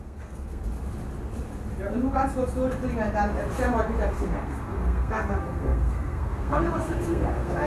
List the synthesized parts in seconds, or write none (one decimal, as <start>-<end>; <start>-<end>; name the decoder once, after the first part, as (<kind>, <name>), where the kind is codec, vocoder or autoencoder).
0.0-0.6 (codec, SNAC); 4.1-7.7